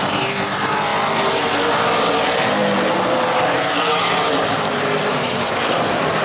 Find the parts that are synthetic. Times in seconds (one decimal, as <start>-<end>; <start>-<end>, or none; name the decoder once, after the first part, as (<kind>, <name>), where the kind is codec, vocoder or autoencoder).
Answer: none